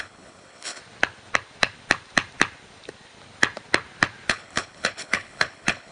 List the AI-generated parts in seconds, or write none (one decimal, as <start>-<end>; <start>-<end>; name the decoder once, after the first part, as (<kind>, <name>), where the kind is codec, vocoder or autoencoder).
0.0-0.8 (codec, HILCodec); 4.3-5.9